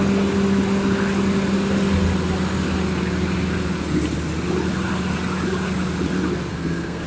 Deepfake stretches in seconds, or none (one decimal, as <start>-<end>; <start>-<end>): 6.5-7.1